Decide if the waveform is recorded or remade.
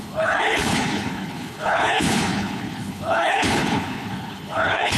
remade